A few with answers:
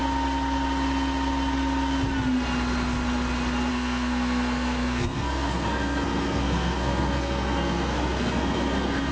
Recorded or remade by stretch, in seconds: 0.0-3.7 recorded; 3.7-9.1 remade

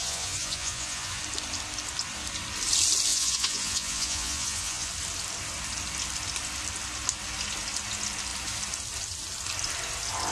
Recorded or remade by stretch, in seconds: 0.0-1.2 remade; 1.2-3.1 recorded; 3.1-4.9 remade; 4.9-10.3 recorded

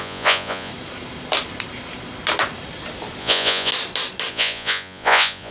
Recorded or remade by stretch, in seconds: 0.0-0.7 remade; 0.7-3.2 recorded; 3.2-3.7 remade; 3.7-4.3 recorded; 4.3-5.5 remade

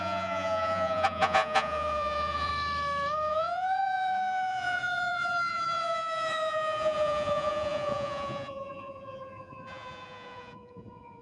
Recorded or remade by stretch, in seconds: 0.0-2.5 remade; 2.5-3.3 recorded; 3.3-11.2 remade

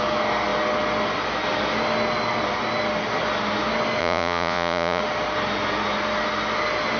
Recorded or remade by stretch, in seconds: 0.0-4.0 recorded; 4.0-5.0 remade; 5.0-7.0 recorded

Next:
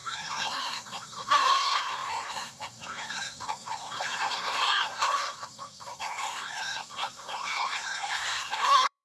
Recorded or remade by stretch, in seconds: 0.0-9.0 remade